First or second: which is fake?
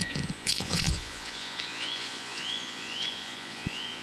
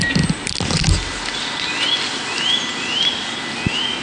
first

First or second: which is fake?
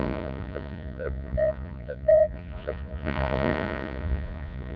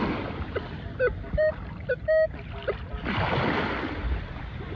first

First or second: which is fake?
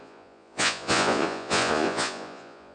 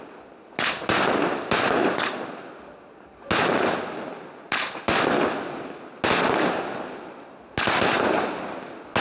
first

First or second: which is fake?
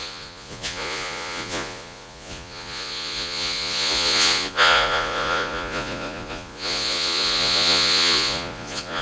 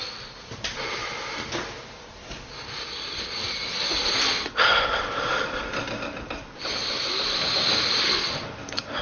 first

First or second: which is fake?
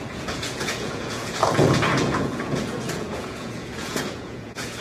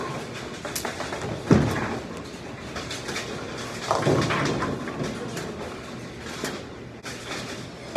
first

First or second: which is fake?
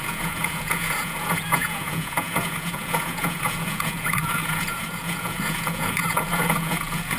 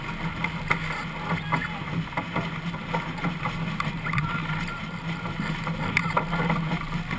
first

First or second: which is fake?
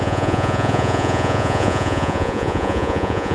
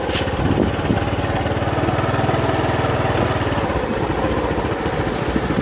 first